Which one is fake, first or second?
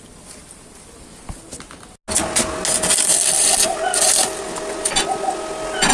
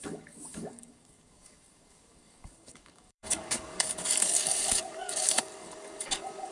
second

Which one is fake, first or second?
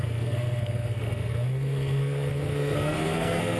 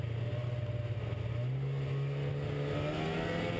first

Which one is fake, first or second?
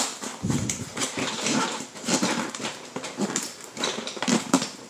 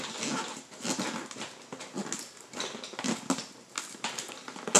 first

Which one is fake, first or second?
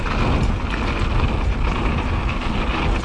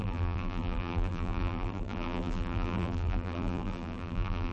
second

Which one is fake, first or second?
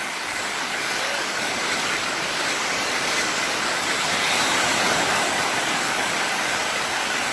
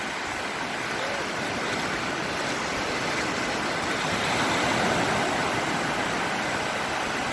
first